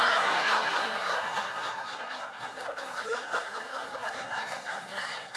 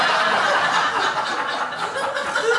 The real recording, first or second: second